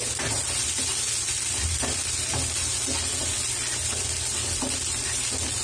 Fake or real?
real